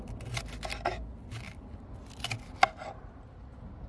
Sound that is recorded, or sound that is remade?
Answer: recorded